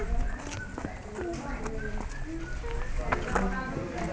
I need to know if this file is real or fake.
real